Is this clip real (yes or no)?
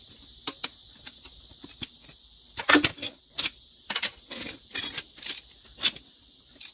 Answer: yes